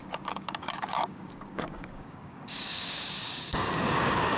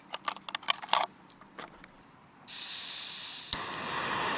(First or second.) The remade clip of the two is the first